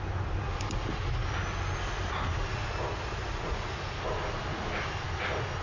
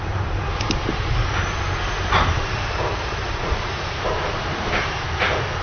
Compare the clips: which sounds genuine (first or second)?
first